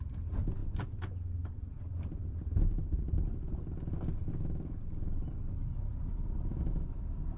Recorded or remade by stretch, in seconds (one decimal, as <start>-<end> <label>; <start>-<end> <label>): 0.0-6.5 recorded; 6.5-7.0 remade; 7.0-7.4 recorded